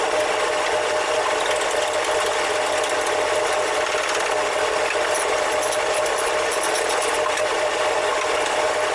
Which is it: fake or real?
real